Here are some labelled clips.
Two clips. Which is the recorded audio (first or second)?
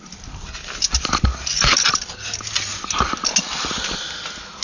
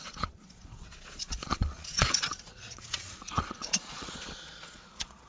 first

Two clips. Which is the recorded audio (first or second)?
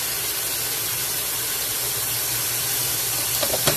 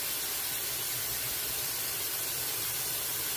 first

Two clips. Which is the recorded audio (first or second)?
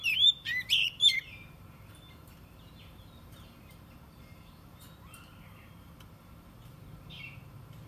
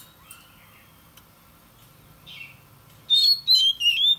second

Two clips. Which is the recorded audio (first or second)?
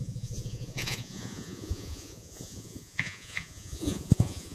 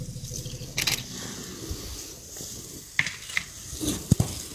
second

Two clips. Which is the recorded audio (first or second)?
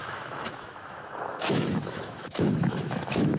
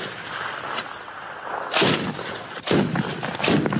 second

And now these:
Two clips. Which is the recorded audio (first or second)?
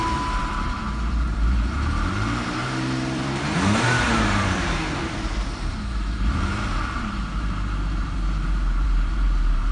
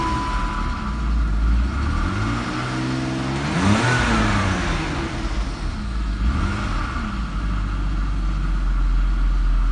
second